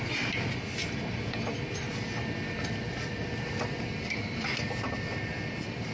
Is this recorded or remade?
recorded